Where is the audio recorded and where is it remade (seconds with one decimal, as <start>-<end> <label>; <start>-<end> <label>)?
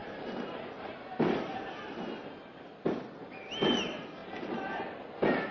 0.0-5.5 recorded